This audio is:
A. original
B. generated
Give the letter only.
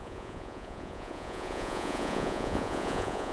B